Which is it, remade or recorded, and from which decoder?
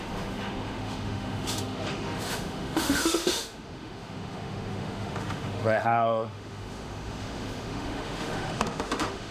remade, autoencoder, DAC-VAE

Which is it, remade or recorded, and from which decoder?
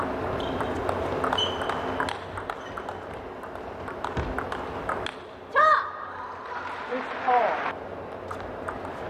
recorded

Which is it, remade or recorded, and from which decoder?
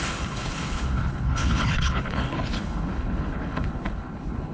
remade, codec, HILCodec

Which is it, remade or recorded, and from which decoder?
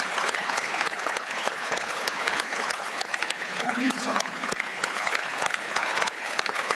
remade, codec, HILCodec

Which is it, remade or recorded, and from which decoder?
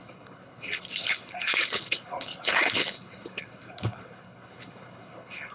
remade, codec, HILCodec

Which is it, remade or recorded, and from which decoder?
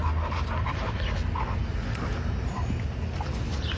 recorded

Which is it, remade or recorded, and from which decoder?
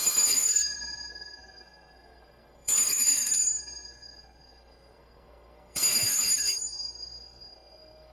remade, codec, SNAC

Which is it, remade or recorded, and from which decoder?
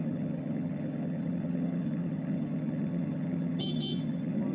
remade, vocoder, HiFi-GAN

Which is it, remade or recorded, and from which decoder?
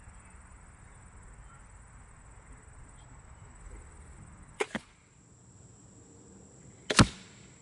recorded